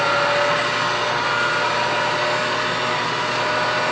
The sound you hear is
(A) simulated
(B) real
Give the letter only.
B